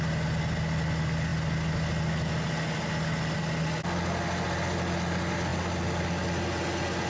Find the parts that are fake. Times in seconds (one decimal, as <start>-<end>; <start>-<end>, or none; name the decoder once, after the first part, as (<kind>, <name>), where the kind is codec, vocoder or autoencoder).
none